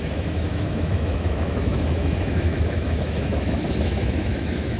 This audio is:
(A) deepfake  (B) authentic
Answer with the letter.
A